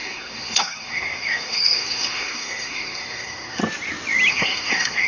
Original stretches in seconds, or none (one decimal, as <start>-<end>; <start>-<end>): 3.6-4.3